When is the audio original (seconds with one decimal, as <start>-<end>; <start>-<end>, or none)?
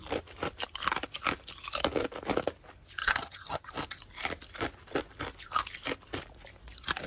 0.0-3.0; 3.7-7.1